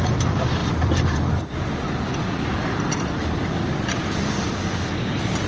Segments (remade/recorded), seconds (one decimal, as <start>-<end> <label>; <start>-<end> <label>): 0.0-5.5 recorded